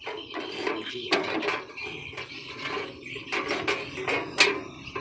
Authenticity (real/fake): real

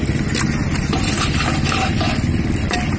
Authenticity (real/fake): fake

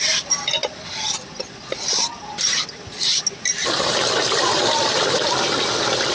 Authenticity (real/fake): fake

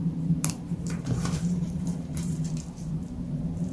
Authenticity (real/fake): fake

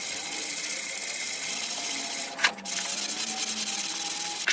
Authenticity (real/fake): fake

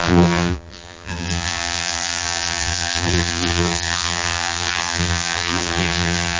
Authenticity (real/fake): fake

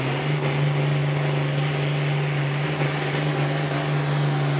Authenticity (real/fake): real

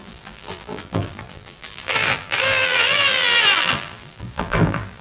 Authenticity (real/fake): fake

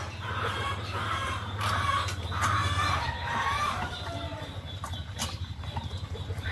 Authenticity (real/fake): fake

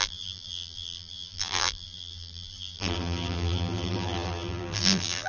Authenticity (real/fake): fake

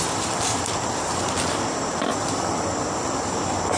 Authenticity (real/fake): fake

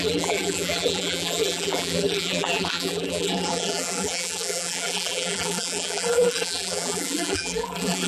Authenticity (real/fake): fake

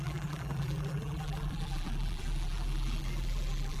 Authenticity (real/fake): fake